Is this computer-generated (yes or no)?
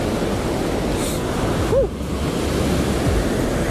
no